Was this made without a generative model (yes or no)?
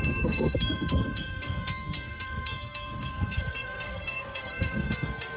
no